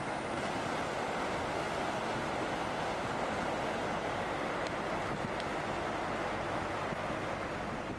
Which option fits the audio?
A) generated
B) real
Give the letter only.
B